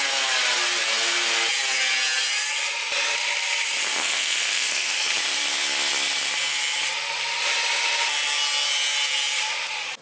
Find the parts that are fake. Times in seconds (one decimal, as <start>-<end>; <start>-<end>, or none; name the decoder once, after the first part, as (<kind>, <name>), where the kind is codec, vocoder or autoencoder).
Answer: 4.0-5.1 (codec, SNAC)